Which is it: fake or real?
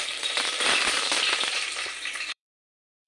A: fake